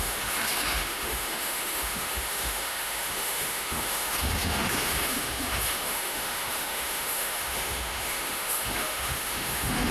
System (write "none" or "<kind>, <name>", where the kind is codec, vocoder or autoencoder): autoencoder, DAC-VAE